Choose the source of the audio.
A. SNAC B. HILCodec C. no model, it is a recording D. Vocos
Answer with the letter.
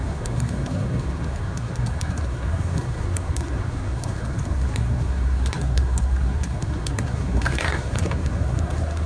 A